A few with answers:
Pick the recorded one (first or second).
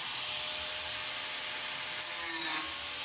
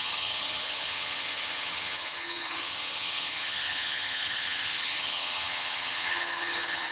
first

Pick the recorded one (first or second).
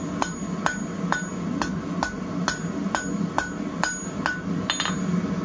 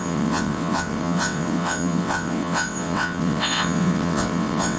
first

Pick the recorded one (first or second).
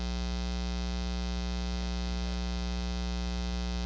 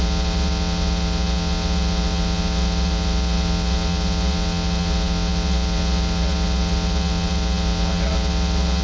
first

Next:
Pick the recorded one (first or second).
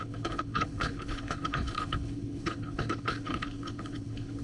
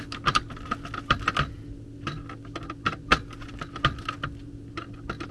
second